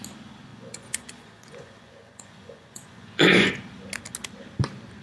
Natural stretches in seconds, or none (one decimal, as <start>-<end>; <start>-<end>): 0.0-0.5; 3.5-5.0

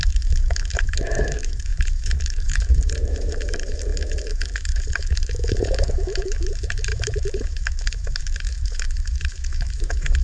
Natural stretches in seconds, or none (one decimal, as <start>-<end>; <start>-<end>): none

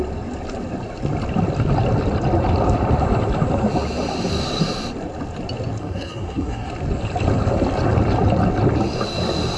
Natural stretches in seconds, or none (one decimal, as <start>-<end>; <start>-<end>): 0.0-5.8; 6.7-9.6

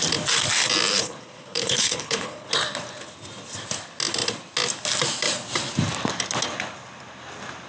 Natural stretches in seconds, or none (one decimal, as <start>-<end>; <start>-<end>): 0.0-0.9; 2.5-7.7

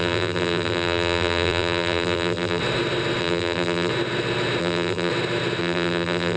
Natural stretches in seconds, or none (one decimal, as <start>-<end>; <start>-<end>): 2.6-3.2; 3.9-4.6; 5.1-5.6